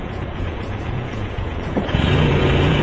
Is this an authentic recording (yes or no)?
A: no